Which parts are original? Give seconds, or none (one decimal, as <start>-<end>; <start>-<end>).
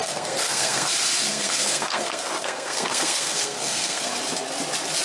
0.9-1.3; 4.1-5.0